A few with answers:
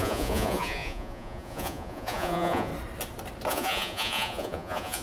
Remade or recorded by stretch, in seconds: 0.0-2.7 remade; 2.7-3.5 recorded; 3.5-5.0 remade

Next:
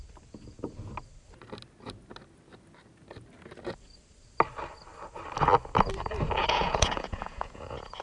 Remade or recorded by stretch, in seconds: 0.0-6.4 recorded; 6.4-8.0 remade

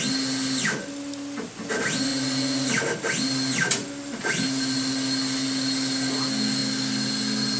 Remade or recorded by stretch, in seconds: 0.0-7.6 recorded